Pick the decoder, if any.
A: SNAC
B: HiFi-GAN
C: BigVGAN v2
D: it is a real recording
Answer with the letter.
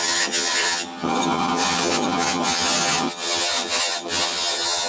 B